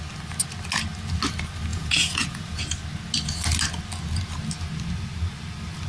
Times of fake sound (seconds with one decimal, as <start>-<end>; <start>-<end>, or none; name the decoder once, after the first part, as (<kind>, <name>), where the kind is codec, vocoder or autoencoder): 1.7-2.6 (vocoder, Vocos)